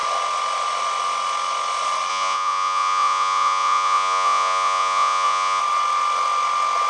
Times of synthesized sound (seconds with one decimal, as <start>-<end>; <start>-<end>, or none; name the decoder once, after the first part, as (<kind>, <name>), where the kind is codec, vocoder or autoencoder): 2.1-5.6 (vocoder, Vocos)